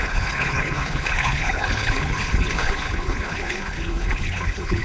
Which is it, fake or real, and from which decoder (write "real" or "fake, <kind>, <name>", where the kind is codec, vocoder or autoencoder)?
fake, codec, HILCodec